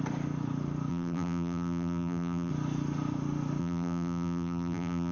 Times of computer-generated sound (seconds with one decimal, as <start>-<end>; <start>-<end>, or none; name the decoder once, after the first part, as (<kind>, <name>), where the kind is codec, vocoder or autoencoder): 0.9-2.5 (vocoder, BigVGAN v2); 3.6-5.1